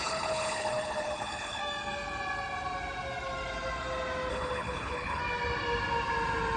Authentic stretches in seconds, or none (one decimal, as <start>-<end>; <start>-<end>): 1.6-4.3; 5.2-6.6